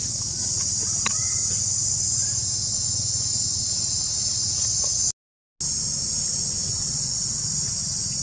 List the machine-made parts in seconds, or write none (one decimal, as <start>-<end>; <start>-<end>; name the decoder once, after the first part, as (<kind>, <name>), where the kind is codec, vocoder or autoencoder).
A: 6.7-7.5 (vocoder, WaveNeXt)